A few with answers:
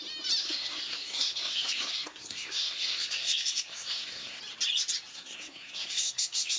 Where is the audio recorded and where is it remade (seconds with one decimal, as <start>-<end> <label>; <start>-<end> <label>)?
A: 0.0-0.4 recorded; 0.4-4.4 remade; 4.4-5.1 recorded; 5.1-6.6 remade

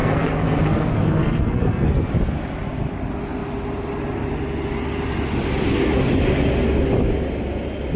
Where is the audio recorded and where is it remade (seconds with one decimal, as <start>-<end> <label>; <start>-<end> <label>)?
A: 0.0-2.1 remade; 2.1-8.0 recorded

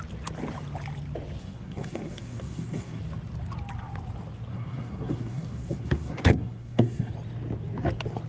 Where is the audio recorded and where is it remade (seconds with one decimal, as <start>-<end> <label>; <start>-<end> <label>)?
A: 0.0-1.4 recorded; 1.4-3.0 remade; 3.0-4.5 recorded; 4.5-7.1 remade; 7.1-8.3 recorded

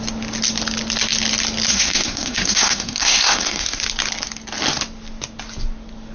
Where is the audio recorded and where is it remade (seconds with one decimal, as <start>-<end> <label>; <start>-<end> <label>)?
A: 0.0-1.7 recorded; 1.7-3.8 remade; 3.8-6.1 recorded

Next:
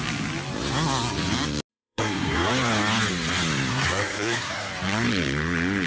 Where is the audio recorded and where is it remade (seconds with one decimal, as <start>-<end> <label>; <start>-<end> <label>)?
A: 0.0-1.7 recorded; 1.7-2.5 remade; 2.5-3.7 recorded; 3.7-4.7 remade; 4.7-5.9 recorded